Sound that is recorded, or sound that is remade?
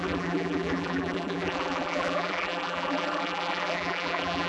remade